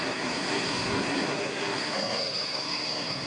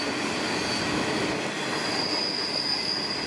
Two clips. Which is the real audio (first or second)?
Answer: second